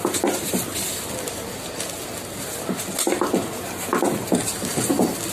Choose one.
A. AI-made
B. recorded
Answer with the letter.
B